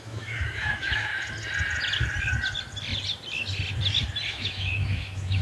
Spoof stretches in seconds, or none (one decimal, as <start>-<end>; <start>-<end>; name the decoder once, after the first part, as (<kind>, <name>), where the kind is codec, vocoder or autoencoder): 0.0-1.1 (autoencoder, DAC-VAE); 4.3-5.4

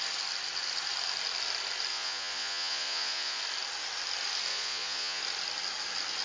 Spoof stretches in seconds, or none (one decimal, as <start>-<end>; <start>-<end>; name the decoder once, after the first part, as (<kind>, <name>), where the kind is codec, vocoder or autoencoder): 1.9-3.4 (vocoder, Vocos); 4.5-5.2